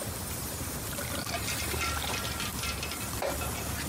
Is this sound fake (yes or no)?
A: no